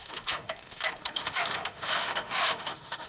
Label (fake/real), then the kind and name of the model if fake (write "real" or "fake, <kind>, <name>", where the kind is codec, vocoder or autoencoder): fake, autoencoder, DAC-VAE